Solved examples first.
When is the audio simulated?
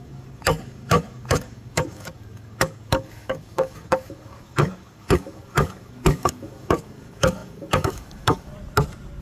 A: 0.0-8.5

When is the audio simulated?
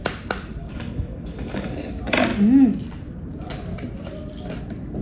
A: 0.6-1.9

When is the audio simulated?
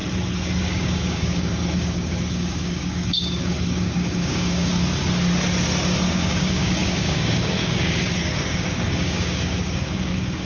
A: 0.6-4.7; 6.1-10.5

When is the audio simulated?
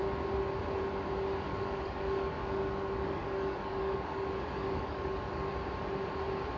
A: 1.5-5.5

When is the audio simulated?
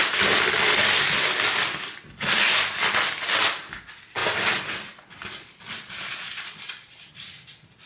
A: none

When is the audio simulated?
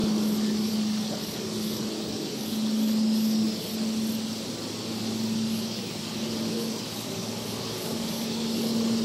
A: 0.0-3.7; 4.7-9.0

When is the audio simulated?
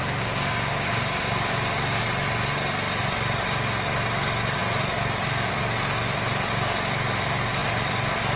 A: 0.0-2.0